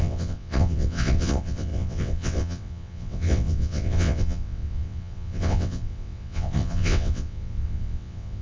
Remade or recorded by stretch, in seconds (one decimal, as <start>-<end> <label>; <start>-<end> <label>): 0.0-8.4 remade